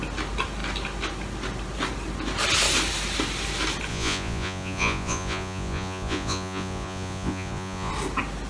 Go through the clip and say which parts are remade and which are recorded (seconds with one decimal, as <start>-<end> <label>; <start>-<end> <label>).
0.0-3.9 recorded; 3.9-7.9 remade; 7.9-8.5 recorded